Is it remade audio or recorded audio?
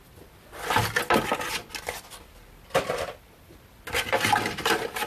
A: recorded